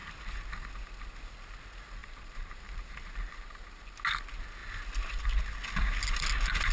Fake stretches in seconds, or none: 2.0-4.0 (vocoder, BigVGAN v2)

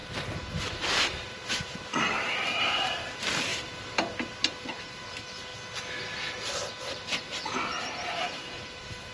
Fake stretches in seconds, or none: 0.0-5.5 (vocoder, BigVGAN v2); 7.2-9.1